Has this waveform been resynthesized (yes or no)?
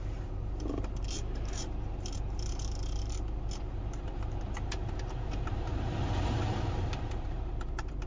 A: yes